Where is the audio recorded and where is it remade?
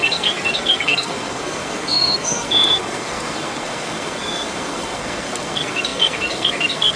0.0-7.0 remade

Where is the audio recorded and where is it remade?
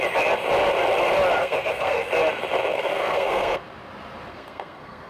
0.0-1.4 recorded; 1.4-2.1 remade; 2.1-2.7 recorded; 2.7-3.6 remade; 3.6-4.3 recorded; 4.3-5.1 remade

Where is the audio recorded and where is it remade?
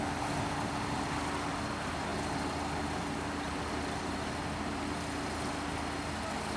0.0-6.6 recorded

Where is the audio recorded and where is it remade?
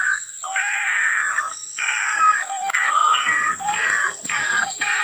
0.0-5.0 remade